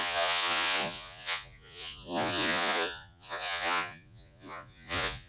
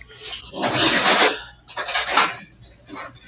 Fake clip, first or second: first